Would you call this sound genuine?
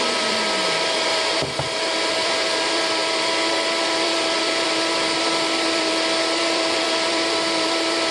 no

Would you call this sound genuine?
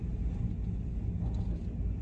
yes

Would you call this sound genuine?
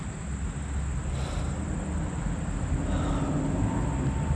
yes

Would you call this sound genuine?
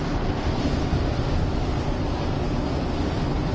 yes